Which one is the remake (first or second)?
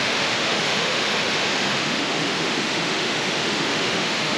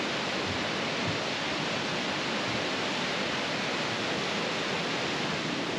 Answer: first